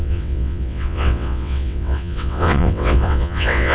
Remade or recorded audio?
remade